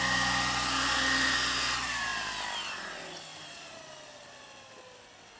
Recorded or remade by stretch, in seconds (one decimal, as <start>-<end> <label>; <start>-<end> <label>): 0.0-3.3 recorded; 3.3-3.8 remade; 3.8-5.4 recorded